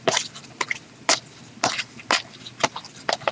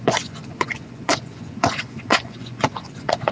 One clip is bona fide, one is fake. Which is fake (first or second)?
second